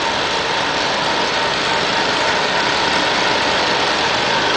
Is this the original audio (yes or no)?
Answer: yes